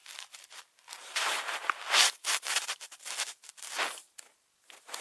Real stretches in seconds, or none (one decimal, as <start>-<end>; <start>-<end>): 3.0-5.0